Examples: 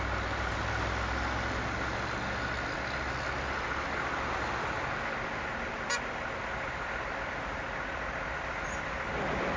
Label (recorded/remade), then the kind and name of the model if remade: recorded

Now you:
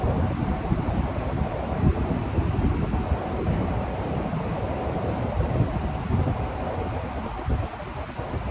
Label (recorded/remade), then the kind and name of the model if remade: recorded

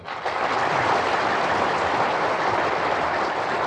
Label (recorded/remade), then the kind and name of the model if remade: recorded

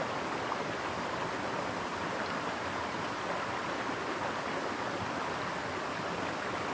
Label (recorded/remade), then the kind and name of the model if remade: recorded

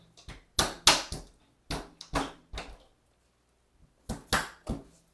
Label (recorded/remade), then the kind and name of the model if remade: recorded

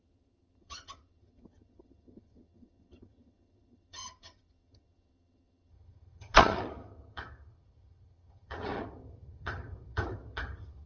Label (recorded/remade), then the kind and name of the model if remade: remade, vocoder, HiFi-GAN